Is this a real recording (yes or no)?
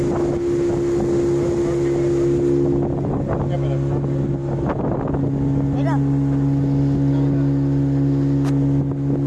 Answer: yes